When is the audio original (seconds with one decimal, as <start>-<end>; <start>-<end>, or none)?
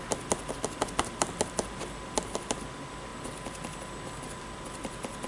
0.0-5.3